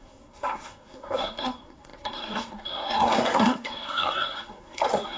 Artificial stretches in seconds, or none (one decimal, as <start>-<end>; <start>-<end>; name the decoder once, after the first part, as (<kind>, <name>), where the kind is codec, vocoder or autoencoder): 0.0-5.2 (codec, SNAC)